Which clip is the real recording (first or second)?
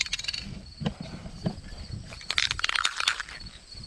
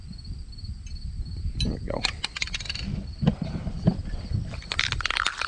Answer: first